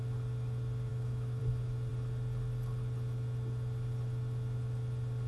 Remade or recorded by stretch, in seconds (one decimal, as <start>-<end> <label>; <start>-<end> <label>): 0.0-0.9 recorded; 0.9-1.4 remade; 1.4-5.3 recorded